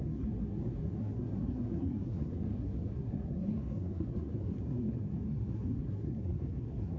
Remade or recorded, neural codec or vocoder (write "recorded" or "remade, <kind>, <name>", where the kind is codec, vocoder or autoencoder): remade, codec, SNAC